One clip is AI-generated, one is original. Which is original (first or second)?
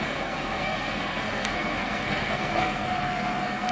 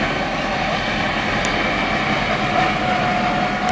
second